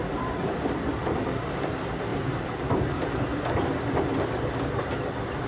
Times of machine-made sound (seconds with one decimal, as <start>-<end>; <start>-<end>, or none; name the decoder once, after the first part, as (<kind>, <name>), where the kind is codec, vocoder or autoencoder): 2.1-4.2 (vocoder, BigVGAN v2)